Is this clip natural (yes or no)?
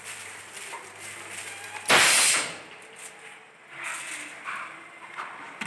yes